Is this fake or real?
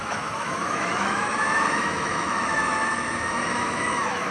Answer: fake